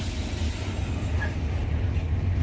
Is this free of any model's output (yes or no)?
yes